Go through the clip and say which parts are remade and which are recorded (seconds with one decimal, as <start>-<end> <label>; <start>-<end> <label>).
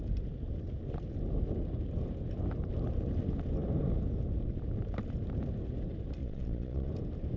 0.0-6.2 recorded; 6.2-6.9 remade; 6.9-7.4 recorded